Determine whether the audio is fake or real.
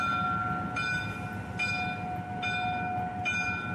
real